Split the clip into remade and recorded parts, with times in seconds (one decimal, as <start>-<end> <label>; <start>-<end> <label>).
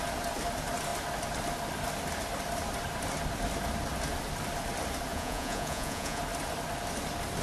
0.0-5.1 recorded; 5.1-6.2 remade; 6.2-7.4 recorded